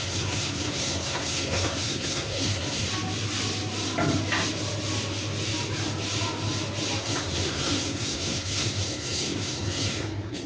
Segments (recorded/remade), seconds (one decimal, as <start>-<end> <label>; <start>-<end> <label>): 0.0-2.9 remade; 2.9-7.0 recorded; 7.0-10.5 remade